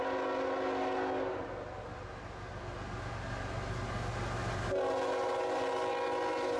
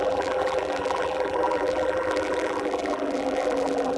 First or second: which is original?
first